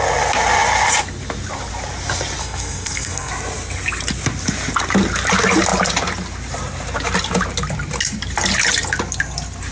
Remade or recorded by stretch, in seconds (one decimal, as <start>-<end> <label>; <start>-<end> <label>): 0.0-2.4 recorded; 2.4-3.3 remade; 3.3-9.7 recorded